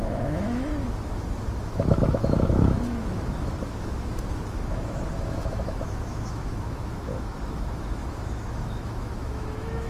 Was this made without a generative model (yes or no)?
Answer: no